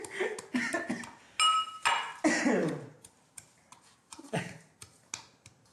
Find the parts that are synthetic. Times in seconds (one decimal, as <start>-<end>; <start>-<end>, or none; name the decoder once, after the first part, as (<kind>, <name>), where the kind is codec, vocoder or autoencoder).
2.6-5.1 (vocoder, BigVGAN v2)